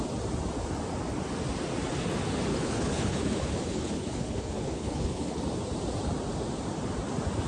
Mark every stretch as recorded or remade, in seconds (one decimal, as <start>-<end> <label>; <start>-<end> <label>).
0.0-2.5 recorded; 2.5-5.4 remade; 5.4-7.5 recorded